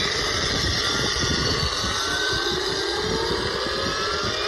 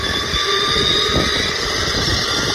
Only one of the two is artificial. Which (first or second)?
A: second